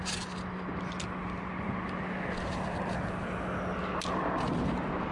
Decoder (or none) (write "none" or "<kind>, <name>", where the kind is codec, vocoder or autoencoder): none